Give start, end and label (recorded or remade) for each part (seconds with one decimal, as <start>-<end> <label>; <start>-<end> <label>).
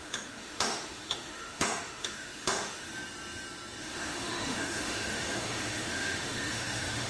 0.0-2.9 remade; 2.9-3.8 recorded; 3.8-7.1 remade